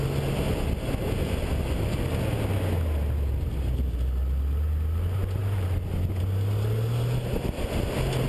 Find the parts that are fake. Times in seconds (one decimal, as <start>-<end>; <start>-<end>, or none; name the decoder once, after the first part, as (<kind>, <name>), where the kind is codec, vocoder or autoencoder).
none